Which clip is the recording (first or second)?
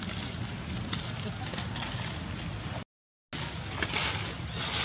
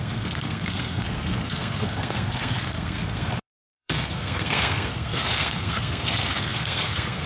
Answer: first